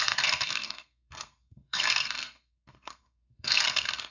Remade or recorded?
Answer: remade